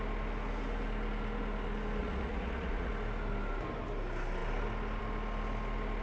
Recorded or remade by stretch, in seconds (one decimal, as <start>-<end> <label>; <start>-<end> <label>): 0.0-2.0 recorded; 2.0-2.9 remade; 2.9-6.0 recorded